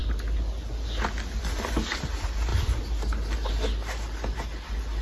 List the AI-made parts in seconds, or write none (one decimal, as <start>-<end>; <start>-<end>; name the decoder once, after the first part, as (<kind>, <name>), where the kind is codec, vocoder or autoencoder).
none